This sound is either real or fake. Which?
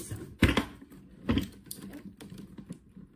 real